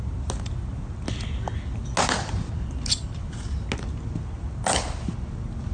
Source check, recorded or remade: recorded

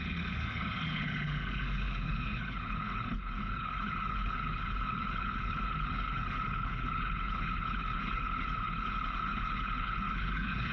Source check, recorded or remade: remade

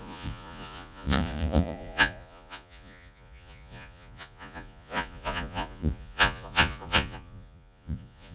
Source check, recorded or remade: remade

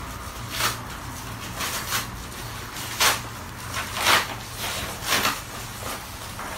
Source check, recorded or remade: recorded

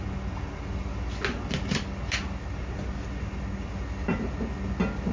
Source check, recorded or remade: recorded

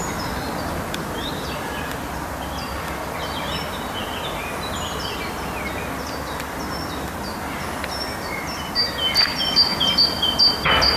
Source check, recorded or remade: recorded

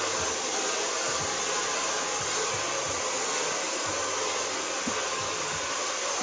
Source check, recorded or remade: recorded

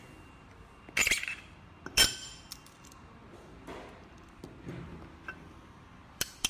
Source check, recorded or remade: recorded